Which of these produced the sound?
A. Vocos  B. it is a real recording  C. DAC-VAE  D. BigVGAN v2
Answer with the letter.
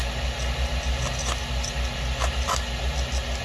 B